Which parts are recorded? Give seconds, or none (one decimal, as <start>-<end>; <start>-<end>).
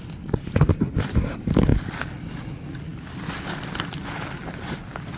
0.0-5.2